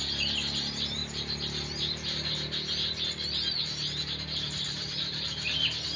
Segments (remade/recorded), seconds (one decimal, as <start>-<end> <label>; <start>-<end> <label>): 0.0-6.0 recorded